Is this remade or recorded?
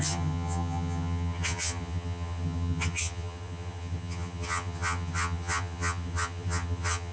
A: remade